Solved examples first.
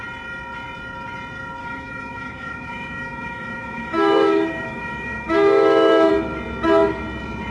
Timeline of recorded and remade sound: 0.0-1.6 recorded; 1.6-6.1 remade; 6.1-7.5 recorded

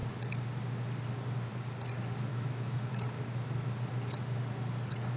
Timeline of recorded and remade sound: 0.0-2.3 recorded; 2.3-2.9 remade; 2.9-5.2 recorded

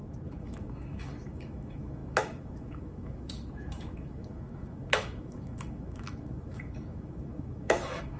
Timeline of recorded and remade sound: 0.0-8.2 remade

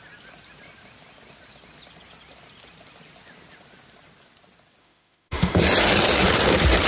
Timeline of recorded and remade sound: 0.0-4.8 recorded; 4.8-5.6 remade; 5.6-6.9 recorded

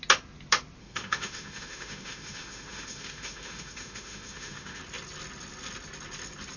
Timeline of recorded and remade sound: 0.0-0.8 recorded; 0.8-4.8 remade; 4.8-6.6 recorded

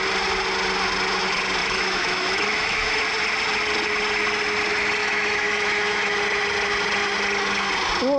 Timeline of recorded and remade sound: 0.0-1.6 recorded; 1.6-3.0 remade; 3.0-5.0 recorded; 5.0-6.2 remade; 6.2-8.2 recorded